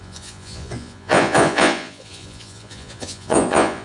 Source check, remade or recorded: remade